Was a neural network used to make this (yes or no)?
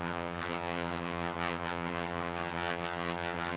yes